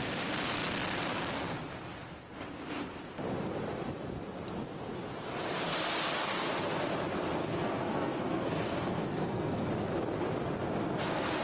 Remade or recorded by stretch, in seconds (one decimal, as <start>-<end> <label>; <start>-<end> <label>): 0.0-7.4 recorded; 7.4-9.7 remade; 9.7-11.4 recorded